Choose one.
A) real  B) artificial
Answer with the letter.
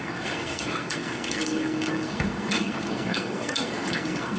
B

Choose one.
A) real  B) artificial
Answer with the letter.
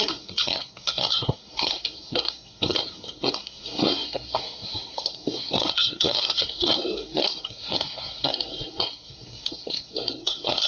B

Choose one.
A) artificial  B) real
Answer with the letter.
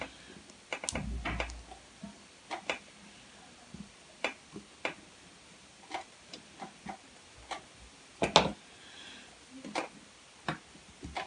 B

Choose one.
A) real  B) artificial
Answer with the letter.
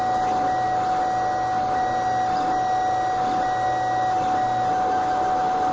A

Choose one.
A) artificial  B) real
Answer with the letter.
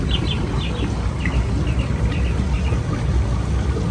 B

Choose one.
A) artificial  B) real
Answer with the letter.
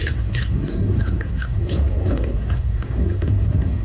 A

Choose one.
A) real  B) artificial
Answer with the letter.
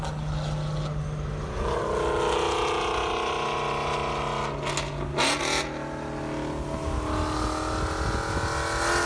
A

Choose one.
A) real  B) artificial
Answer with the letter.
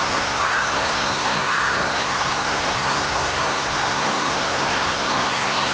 B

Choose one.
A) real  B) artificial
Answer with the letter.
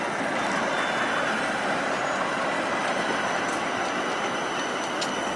A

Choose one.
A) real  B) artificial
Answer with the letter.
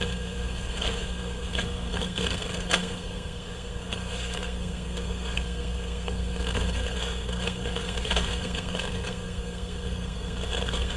B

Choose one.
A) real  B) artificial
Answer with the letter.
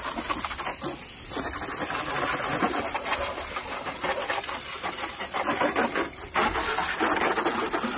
A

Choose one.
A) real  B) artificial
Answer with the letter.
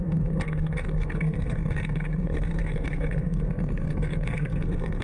B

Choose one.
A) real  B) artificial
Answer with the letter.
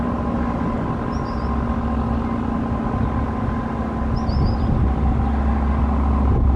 A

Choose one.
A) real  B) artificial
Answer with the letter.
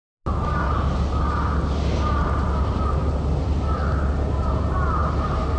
A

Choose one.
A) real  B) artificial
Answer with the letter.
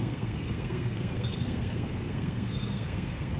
B